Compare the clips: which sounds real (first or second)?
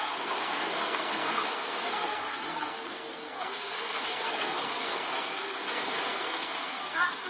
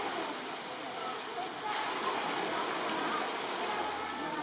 second